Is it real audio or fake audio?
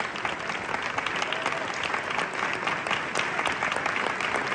real